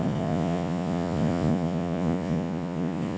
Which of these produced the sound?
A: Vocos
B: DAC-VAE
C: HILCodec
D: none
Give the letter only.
A